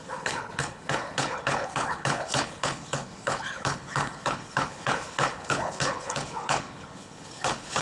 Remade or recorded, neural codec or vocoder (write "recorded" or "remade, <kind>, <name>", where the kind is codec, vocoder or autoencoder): remade, codec, HILCodec